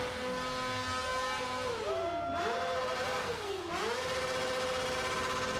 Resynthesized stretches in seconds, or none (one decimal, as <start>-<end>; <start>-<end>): 3.2-3.7